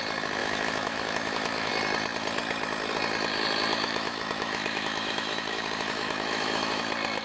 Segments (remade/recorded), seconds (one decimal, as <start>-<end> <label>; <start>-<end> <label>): 0.0-0.4 recorded; 0.4-1.7 remade; 1.7-3.7 recorded; 3.7-6.8 remade; 6.8-7.2 recorded